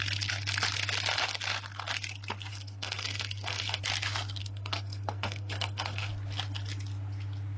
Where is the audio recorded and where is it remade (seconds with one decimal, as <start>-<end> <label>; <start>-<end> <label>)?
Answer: 0.0-2.5 recorded; 2.5-3.8 remade; 3.8-4.4 recorded; 4.4-6.1 remade; 6.1-7.6 recorded